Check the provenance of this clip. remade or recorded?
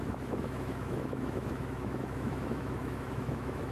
remade